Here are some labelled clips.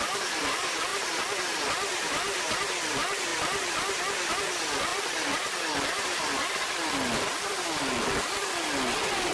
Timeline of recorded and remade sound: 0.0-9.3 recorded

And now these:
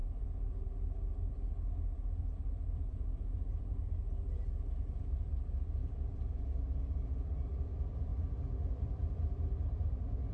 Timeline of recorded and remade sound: 0.0-8.1 remade; 8.1-8.7 recorded; 8.7-10.3 remade

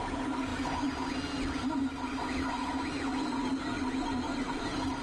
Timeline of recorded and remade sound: 0.0-5.0 recorded

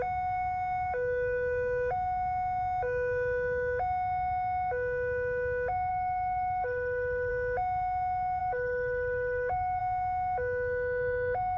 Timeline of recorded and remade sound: 0.0-5.9 recorded; 5.9-7.3 remade; 7.3-8.4 recorded; 8.4-9.8 remade; 9.8-11.6 recorded